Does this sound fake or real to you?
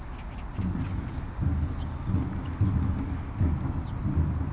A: real